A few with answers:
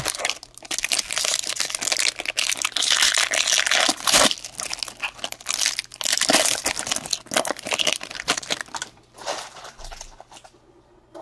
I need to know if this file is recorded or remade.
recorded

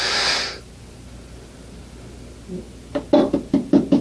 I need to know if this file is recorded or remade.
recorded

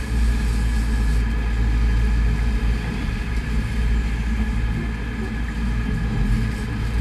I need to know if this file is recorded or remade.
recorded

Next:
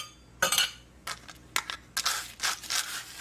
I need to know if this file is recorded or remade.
recorded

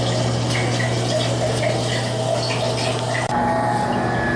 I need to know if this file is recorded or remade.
recorded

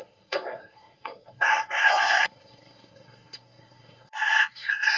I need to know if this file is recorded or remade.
remade